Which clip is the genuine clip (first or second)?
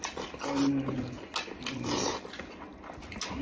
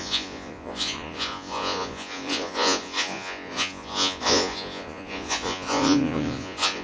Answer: first